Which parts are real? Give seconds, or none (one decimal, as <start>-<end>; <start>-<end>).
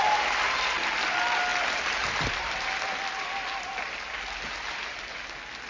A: 0.0-5.7